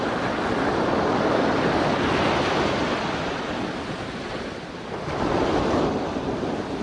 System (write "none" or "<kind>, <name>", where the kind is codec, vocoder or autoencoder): none